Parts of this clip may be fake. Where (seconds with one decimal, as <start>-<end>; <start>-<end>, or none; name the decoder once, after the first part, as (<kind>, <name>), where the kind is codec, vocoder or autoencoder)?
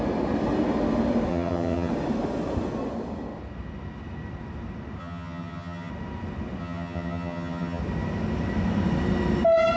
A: 1.3-1.9 (vocoder, HiFi-GAN); 5.0-5.9; 6.6-7.8